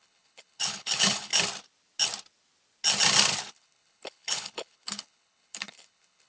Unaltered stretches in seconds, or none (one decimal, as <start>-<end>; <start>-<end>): 1.3-3.5